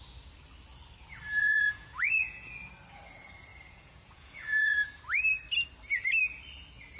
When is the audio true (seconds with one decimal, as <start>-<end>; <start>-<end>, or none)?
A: 0.0-1.4; 2.7-3.5; 5.0-7.0